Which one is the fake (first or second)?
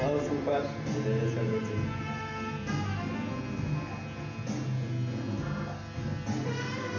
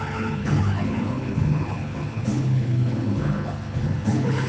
second